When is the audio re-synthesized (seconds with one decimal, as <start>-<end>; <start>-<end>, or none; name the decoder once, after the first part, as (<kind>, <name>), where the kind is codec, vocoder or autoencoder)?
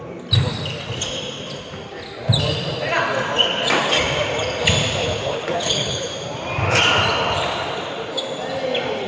5.0-6.1 (codec, HILCodec)